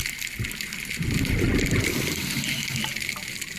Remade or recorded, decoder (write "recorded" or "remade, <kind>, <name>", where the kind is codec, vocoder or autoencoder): recorded